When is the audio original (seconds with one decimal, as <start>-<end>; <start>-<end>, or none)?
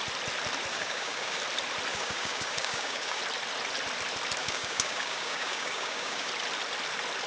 0.0-0.7; 1.4-1.9; 3.2-4.4; 6.3-7.3